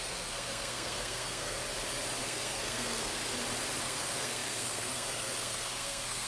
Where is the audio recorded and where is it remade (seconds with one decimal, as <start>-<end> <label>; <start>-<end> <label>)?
0.0-1.6 remade; 1.6-2.2 recorded; 2.2-3.2 remade; 3.2-3.8 recorded; 3.8-6.3 remade